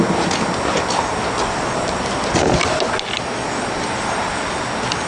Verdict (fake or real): real